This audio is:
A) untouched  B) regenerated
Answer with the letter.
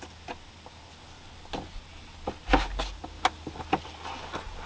A